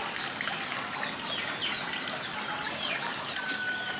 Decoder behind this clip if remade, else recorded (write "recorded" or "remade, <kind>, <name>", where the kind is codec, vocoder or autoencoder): recorded